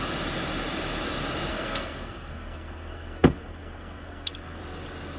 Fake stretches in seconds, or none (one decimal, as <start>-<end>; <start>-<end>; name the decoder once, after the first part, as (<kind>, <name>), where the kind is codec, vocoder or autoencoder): 1.5-4.6 (codec, SNAC)